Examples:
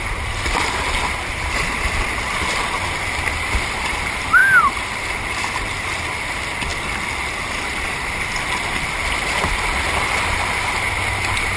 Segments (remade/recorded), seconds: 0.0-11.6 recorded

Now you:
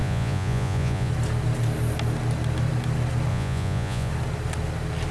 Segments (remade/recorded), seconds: 0.0-1.1 remade; 1.1-3.3 recorded; 3.3-4.1 remade; 4.1-5.1 recorded

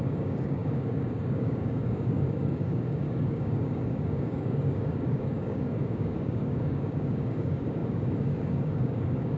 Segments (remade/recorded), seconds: 0.0-9.4 remade

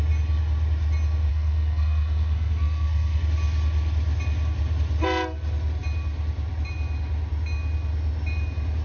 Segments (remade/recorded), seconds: 0.0-1.3 recorded; 1.3-3.2 remade; 3.2-8.8 recorded

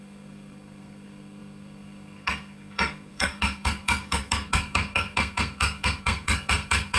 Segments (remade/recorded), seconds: 0.0-7.0 remade

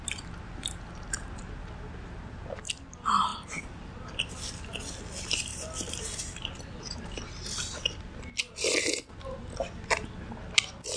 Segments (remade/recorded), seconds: 0.0-11.0 recorded

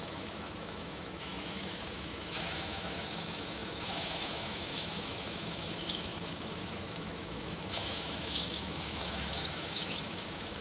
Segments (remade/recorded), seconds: 0.0-10.6 remade